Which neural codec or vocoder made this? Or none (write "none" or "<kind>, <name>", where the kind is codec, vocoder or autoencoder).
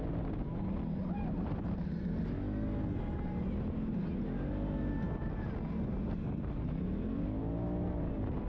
none